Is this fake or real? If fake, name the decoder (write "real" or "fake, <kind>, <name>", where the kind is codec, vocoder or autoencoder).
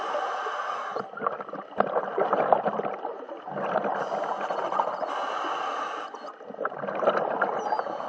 real